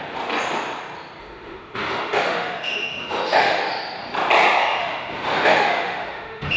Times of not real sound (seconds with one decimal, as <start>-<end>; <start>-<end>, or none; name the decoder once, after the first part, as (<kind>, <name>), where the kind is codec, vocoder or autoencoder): 1.2-3.7 (autoencoder, DAC-VAE); 4.8-6.6